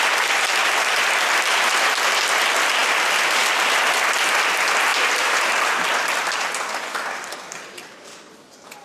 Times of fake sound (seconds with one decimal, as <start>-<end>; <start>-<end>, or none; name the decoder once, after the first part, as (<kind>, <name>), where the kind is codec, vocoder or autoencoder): 4.9-5.5 (vocoder, BigVGAN v2)